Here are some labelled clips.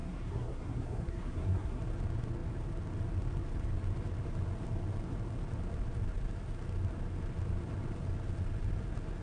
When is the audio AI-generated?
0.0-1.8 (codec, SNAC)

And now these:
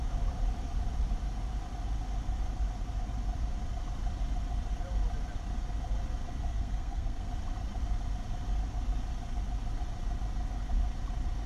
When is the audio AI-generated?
6.5-7.3 (codec, SNAC)

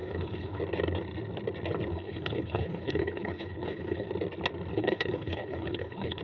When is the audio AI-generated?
0.0-0.6 (codec, HILCodec); 1.9-4.1; 4.7-6.2

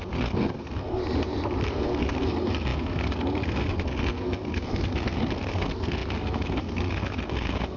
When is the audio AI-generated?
0.0-1.0 (codec, SNAC); 1.7-7.8